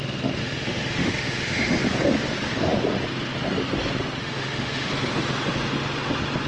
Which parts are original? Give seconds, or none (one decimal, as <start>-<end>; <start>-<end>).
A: 0.0-0.4; 1.8-4.2; 4.9-6.5